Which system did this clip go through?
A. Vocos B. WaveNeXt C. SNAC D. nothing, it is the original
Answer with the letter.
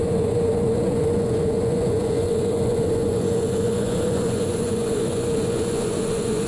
A